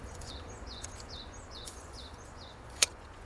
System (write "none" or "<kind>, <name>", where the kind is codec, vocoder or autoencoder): vocoder, Vocos